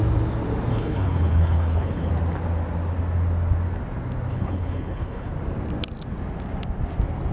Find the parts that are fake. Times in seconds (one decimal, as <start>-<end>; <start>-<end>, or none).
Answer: 0.7-2.1; 4.3-5.3